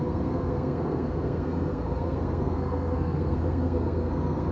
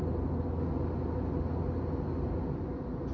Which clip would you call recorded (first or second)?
second